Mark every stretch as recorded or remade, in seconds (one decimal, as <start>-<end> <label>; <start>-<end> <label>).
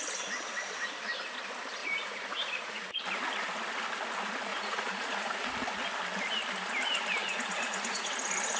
0.0-1.8 recorded; 1.8-3.0 remade; 3.0-4.5 recorded; 4.5-5.5 remade; 5.5-7.2 recorded; 7.2-8.1 remade; 8.1-8.6 recorded